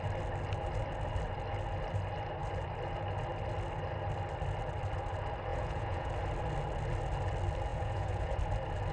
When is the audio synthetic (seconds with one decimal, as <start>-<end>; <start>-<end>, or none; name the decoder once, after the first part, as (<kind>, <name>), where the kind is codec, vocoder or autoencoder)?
5.5-6.1 (vocoder, Vocos); 7.7-8.4